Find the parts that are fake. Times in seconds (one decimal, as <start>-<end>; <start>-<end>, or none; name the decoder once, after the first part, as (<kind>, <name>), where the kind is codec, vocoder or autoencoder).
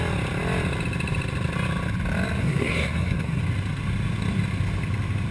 2.4-3.4 (codec, SNAC)